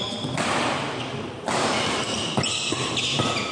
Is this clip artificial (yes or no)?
no